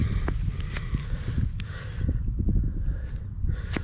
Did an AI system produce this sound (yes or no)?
no